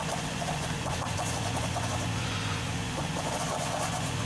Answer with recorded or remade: remade